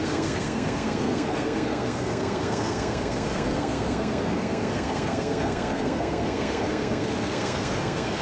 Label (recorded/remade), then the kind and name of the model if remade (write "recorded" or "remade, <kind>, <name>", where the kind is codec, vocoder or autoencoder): remade, codec, SNAC